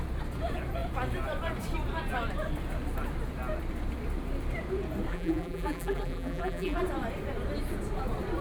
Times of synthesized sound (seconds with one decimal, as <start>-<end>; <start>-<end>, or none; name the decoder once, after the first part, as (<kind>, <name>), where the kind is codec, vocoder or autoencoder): 5.1-6.8 (vocoder, BigVGAN v2)